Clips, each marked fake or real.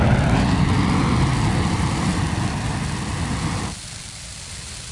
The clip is real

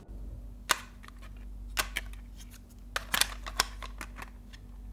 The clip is real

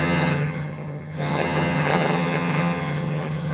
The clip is fake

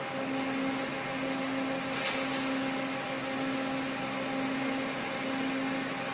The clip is real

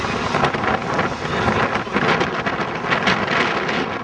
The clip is real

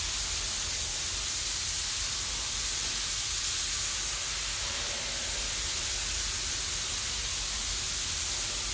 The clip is real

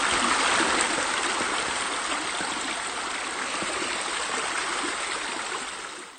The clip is real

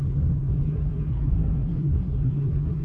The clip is fake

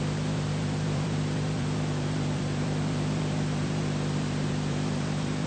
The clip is fake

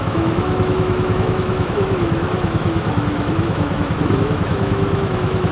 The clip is fake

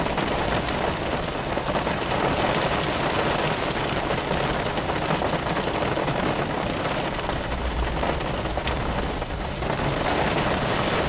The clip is real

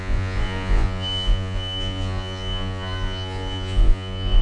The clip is fake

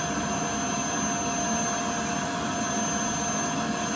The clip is real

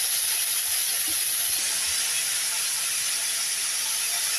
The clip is real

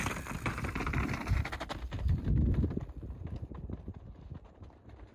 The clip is real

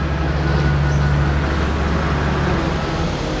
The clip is real